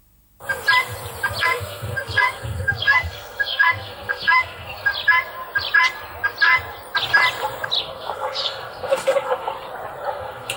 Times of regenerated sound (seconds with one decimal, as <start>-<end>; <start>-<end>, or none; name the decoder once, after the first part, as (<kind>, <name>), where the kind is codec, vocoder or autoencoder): 1.4-4.9 (codec, SNAC); 7.8-9.5; 10.1-10.6